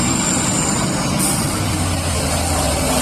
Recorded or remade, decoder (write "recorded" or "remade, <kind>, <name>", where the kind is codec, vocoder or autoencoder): recorded